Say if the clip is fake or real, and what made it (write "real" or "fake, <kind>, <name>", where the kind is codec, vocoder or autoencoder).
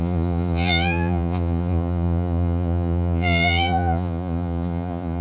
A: fake, vocoder, Vocos